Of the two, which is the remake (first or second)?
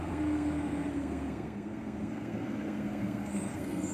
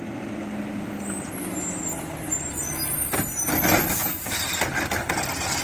first